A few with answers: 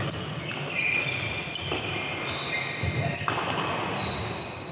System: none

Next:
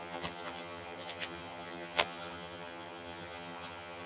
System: vocoder, HiFi-GAN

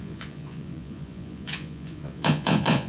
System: vocoder, Vocos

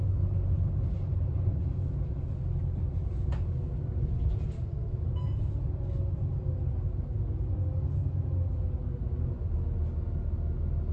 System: none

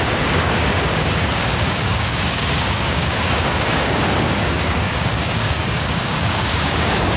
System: codec, DAC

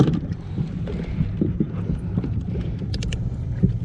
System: vocoder, BigVGAN v2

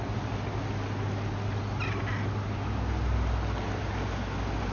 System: none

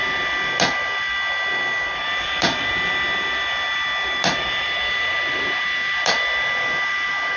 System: none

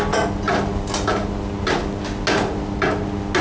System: none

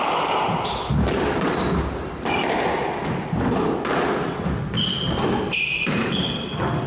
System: none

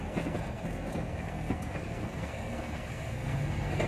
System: codec, SNAC